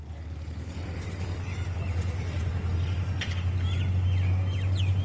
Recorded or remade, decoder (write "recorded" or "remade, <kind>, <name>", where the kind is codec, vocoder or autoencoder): recorded